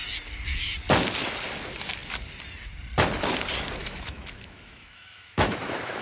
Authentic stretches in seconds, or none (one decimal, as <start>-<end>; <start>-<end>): 0.0-3.8